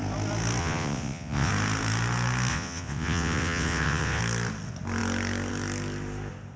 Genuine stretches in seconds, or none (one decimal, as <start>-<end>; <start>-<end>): 0.0-0.6; 1.5-2.5; 4.2-6.6

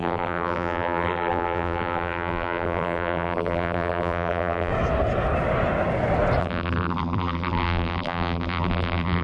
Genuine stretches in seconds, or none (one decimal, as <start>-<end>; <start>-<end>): 4.7-6.4

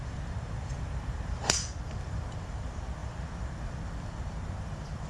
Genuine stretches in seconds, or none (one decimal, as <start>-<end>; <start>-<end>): none

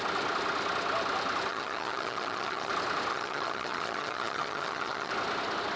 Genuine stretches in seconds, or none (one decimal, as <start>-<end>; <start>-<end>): 0.0-1.5; 2.7-3.1; 5.1-5.8

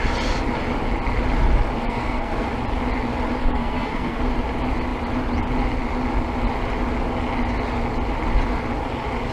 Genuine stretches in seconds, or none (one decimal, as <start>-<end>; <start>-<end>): 0.0-1.8; 2.5-3.4; 4.2-9.3